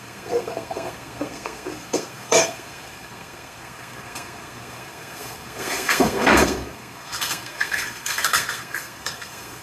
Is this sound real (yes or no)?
no